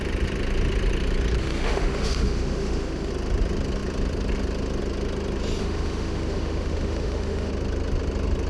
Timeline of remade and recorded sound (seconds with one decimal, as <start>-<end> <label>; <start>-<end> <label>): 0.0-1.4 recorded; 1.4-3.1 remade; 3.1-5.6 recorded; 5.6-7.5 remade; 7.5-8.5 recorded